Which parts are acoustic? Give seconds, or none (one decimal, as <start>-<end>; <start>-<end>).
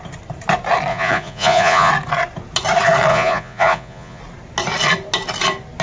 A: 0.0-0.9; 1.9-3.1; 4.2-5.8